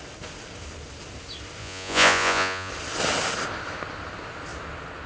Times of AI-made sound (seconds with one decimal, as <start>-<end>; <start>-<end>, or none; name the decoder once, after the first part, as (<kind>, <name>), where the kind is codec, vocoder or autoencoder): 1.6-2.7 (vocoder, Vocos)